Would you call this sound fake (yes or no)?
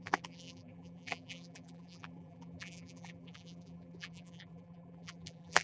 yes